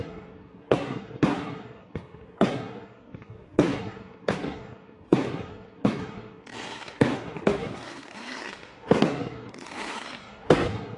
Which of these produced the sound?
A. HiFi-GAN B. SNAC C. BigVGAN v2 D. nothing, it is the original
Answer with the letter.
B